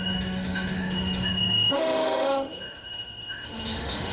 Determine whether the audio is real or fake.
fake